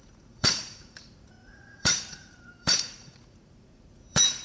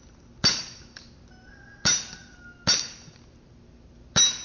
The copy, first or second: first